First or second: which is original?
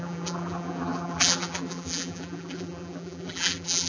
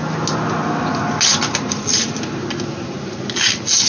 second